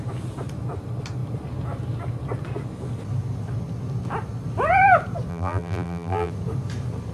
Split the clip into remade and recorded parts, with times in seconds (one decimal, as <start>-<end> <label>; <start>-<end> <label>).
0.0-5.3 recorded; 5.3-6.3 remade; 6.3-7.1 recorded